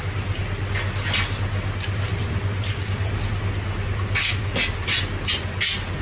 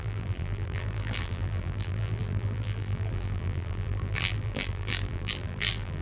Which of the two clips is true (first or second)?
first